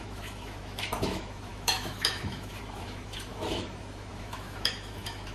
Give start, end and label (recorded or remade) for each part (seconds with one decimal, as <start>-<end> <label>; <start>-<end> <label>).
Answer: 0.0-5.3 remade